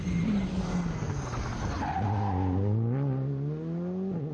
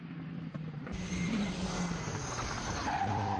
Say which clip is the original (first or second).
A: first